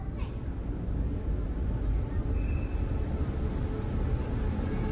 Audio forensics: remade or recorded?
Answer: recorded